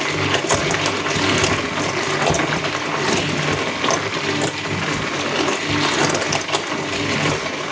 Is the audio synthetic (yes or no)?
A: no